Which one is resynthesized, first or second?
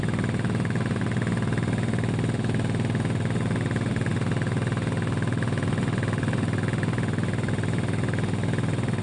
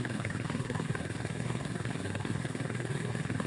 second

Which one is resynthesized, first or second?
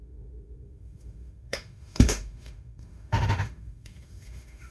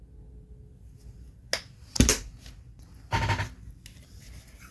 first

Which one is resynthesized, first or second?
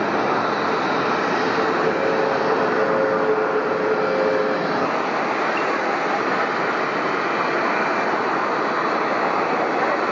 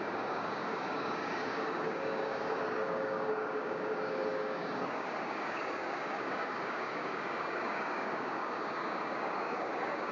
second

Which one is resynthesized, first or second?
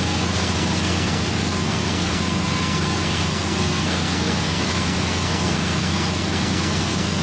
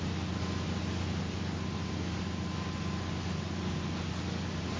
first